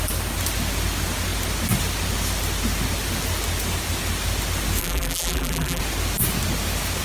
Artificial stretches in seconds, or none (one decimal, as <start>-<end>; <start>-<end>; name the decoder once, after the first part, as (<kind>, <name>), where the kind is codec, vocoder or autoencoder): 4.8-5.8 (vocoder, BigVGAN v2)